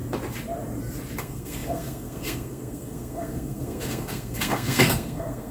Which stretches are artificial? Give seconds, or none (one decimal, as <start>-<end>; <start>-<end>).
1.2-5.5